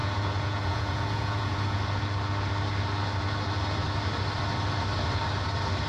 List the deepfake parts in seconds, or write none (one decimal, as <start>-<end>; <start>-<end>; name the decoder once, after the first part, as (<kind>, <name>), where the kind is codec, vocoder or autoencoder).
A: 0.0-1.8 (vocoder, Vocos)